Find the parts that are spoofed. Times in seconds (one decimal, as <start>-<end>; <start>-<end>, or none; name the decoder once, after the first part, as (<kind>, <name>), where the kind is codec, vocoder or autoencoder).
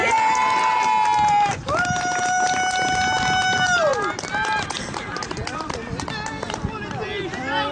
none